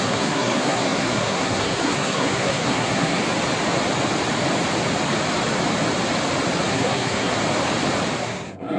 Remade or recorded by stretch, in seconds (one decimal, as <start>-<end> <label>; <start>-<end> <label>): 0.0-3.2 remade; 3.2-6.7 recorded; 6.7-7.3 remade; 7.3-8.2 recorded; 8.2-8.8 remade